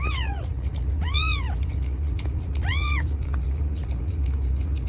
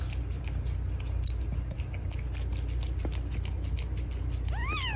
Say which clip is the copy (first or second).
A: first